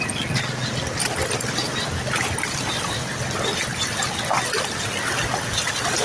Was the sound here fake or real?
real